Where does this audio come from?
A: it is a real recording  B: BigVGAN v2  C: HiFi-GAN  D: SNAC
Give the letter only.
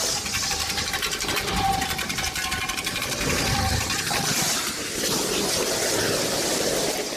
A